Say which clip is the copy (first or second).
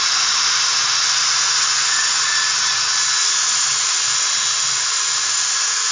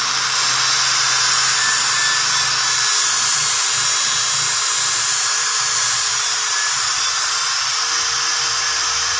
first